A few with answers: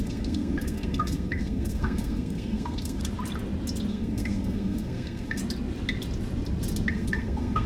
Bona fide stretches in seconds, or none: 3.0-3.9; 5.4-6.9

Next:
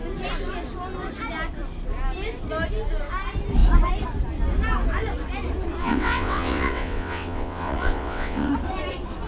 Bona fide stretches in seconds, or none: 0.0-5.8; 8.5-9.3

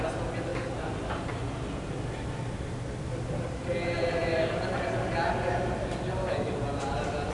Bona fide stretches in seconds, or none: 0.0-7.3

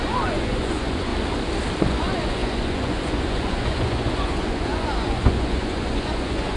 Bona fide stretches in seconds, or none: 1.1-1.8